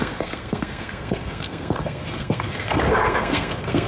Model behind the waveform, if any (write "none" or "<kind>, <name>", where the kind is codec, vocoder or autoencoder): codec, SNAC